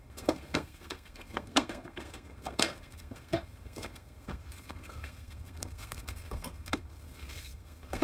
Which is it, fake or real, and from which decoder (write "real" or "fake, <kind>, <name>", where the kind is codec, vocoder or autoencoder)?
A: fake, codec, SNAC